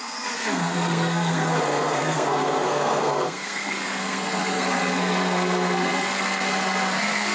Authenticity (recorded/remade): remade